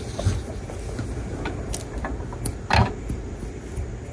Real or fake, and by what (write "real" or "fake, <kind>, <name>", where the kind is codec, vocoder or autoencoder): real